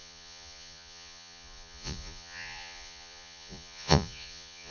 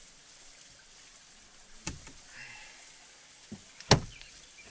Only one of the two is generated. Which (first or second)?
first